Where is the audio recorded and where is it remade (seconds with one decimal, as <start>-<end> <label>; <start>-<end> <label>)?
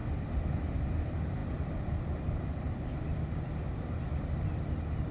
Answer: 0.0-0.8 recorded; 0.8-5.1 remade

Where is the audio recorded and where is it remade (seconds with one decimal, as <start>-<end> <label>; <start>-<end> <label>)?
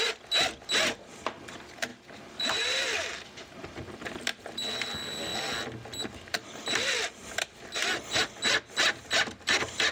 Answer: 0.0-1.9 recorded; 1.9-4.4 remade; 4.4-9.9 recorded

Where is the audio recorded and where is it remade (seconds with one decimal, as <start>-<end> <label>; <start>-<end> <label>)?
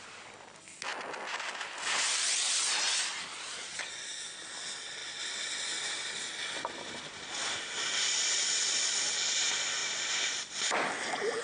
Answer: 0.0-5.0 recorded; 5.0-9.4 remade; 9.4-9.8 recorded; 9.8-10.5 remade; 10.5-11.4 recorded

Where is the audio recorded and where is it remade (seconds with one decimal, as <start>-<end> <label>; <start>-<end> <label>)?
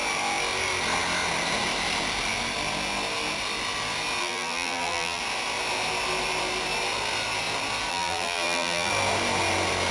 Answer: 0.0-4.2 recorded; 4.2-5.2 remade; 5.2-7.9 recorded; 7.9-8.9 remade; 8.9-9.9 recorded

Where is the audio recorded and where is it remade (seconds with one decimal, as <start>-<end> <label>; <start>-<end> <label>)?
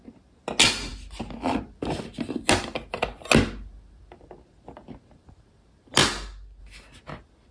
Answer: 0.0-7.5 recorded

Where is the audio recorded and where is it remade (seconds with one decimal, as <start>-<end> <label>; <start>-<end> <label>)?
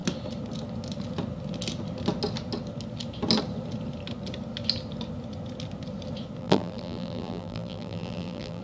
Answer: 0.0-6.4 recorded; 6.4-8.6 remade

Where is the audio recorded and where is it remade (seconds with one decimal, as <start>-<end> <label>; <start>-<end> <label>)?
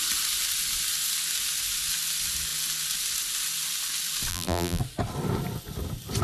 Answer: 0.0-4.3 recorded; 4.3-4.8 remade; 4.8-6.2 recorded